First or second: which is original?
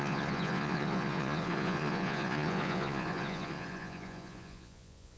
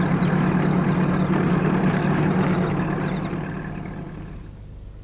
second